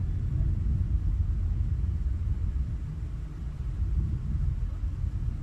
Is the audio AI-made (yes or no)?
no